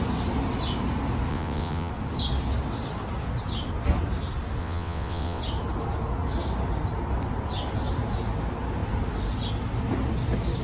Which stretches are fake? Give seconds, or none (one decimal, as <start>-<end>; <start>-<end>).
1.3-1.9; 4.6-5.4